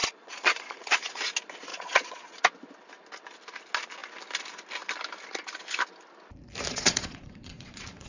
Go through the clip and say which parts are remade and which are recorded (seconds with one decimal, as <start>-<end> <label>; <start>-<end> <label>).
0.0-1.2 remade; 1.2-1.7 recorded; 1.7-2.4 remade; 2.4-6.7 recorded; 6.7-8.1 remade